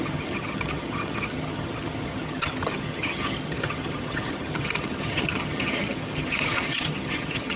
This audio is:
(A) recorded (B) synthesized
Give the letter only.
B